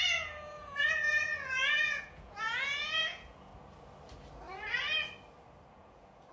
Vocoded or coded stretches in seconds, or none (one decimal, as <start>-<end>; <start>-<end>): 0.0-3.5; 5.7-6.3